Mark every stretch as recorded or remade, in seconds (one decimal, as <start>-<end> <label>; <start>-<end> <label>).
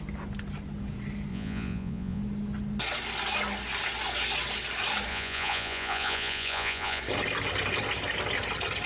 0.0-1.3 recorded; 1.3-2.2 remade; 2.2-5.1 recorded; 5.1-7.0 remade; 7.0-8.9 recorded